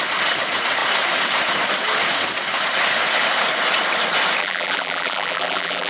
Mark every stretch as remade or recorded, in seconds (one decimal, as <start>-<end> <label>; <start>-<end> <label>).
0.0-4.4 recorded; 4.4-5.9 remade